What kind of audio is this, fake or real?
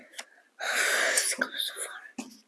real